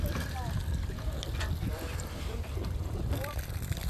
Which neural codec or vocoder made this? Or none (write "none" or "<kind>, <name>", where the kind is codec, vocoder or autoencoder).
vocoder, BigVGAN v2